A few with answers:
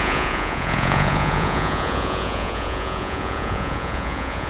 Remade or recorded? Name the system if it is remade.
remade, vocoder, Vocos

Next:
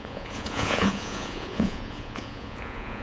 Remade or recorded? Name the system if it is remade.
remade, vocoder, Vocos